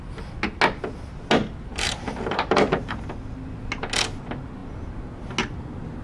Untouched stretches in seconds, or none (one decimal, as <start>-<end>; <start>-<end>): 0.0-1.7; 3.0-6.0